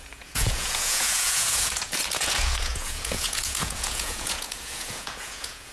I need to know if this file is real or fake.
fake